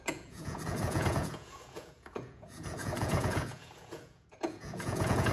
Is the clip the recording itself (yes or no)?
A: no